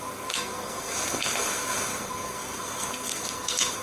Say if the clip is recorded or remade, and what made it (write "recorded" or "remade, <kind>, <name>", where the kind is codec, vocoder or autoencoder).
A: remade, codec, SNAC